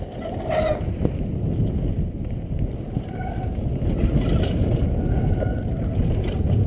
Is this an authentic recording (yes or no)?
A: yes